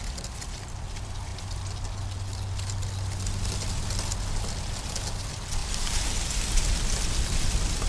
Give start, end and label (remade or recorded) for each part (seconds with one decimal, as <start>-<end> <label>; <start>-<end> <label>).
0.0-5.6 recorded; 5.6-6.4 remade; 6.4-7.9 recorded